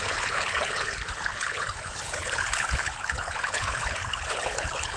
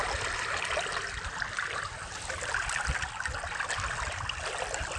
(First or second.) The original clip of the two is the second